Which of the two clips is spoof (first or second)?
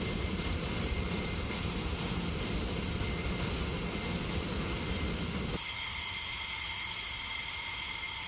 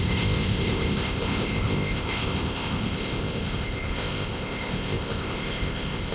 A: second